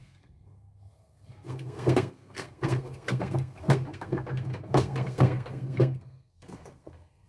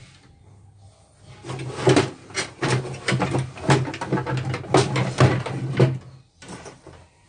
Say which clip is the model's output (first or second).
first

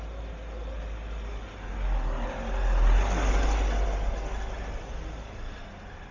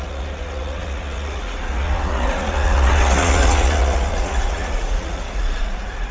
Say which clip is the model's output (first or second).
second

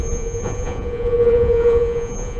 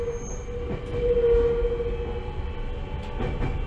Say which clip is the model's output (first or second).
first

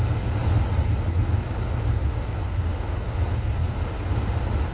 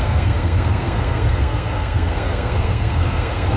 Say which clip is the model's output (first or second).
second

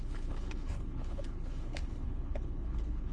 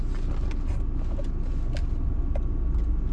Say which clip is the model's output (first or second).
first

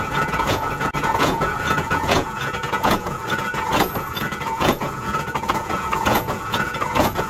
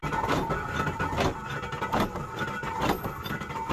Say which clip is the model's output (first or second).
first